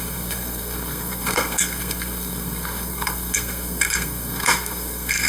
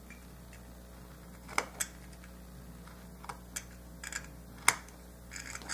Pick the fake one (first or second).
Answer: first